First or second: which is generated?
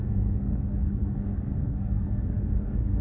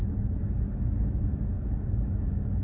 first